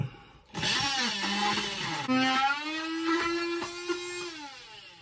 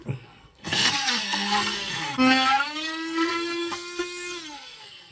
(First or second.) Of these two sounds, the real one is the first